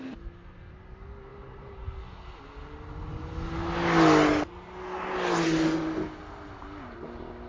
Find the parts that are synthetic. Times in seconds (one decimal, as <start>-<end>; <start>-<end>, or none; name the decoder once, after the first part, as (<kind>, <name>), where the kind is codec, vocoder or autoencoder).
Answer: none